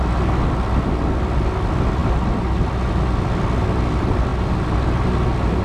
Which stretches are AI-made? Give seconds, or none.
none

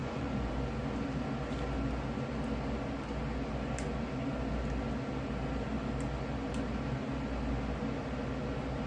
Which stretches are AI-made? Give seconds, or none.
0.0-0.5 (vocoder, Vocos)

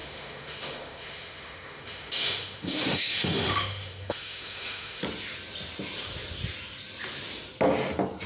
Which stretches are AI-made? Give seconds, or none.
0.0-5.0 (autoencoder, DAC-VAE)

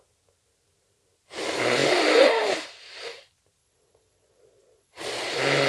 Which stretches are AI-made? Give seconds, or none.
3.6-5.3 (vocoder, Vocos)

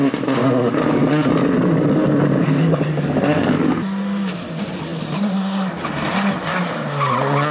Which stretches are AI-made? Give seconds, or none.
0.4-1.3 (codec, DAC); 2.4-3.7